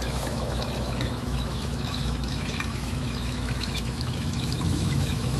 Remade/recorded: remade